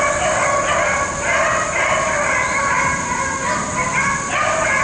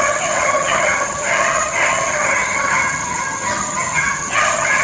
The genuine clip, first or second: first